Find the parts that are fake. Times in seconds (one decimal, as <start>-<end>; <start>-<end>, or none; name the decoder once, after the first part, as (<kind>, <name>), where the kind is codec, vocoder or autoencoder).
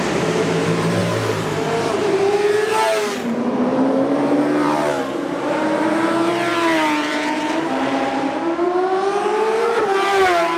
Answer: 0.0-10.6 (vocoder, BigVGAN v2)